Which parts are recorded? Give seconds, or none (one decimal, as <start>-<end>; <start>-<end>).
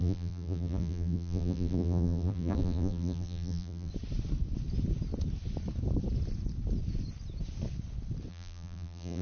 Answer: 3.9-8.3